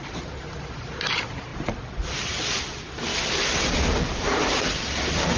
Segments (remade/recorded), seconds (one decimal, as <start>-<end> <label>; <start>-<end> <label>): 0.0-5.4 recorded